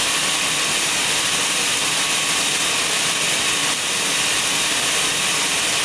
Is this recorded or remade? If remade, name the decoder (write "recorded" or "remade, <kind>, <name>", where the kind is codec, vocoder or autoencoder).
recorded